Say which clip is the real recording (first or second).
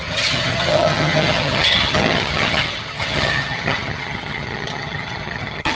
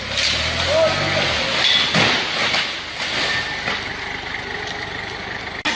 second